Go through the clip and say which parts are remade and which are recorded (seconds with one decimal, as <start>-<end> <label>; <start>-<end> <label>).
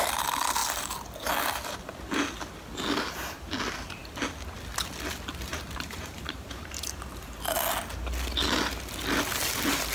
0.0-5.5 recorded; 5.5-7.0 remade; 7.0-9.9 recorded